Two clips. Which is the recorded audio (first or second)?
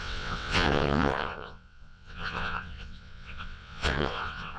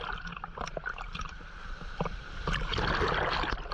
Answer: second